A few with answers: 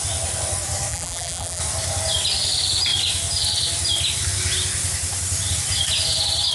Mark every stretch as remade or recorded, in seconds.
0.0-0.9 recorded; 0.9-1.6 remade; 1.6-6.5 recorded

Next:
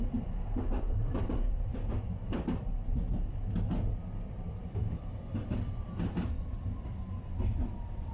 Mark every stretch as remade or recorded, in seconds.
0.0-8.1 remade

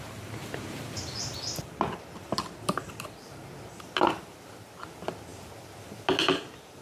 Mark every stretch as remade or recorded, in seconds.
0.0-0.4 recorded; 0.4-3.7 remade; 3.7-6.8 recorded

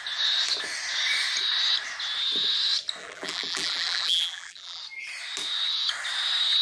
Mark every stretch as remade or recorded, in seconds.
0.0-3.0 recorded; 3.0-4.8 remade; 4.8-6.6 recorded

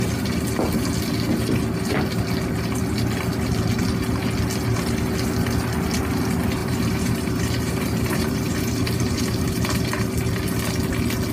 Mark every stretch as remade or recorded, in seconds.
0.0-6.6 recorded; 6.6-9.9 remade; 9.9-11.3 recorded

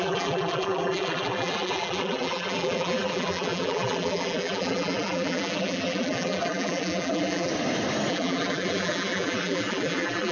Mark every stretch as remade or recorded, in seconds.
0.0-7.5 remade; 7.5-8.1 recorded; 8.1-10.3 remade